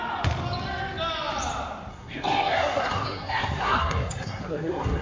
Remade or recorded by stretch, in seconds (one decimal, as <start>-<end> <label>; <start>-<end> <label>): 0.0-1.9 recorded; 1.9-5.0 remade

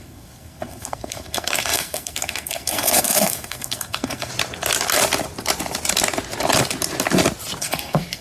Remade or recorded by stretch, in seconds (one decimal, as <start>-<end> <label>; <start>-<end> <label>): 0.0-4.3 remade; 4.3-7.6 recorded; 7.6-8.2 remade

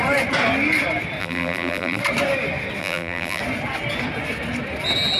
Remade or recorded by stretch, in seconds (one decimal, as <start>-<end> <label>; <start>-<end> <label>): 0.0-1.2 recorded; 1.2-2.0 remade; 2.0-2.8 recorded; 2.8-3.4 remade; 3.4-5.2 recorded